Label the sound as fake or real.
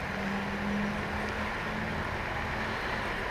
real